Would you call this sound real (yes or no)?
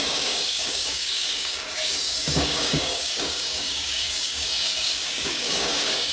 no